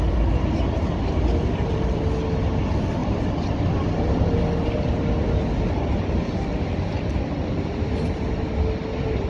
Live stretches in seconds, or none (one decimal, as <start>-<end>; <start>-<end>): 0.0-9.3